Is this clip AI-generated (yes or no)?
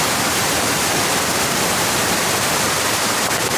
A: yes